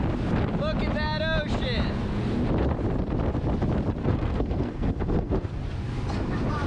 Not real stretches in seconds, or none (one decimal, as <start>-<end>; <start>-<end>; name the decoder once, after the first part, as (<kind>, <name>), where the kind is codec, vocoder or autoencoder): 4.0-5.5 (codec, SNAC)